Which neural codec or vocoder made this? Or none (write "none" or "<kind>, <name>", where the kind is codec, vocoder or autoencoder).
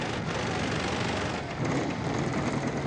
none